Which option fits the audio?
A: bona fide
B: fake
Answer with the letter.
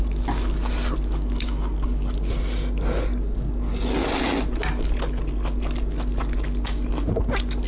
A